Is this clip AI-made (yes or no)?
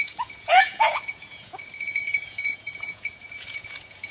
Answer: yes